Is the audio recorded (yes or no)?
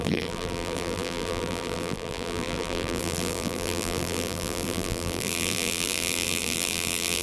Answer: no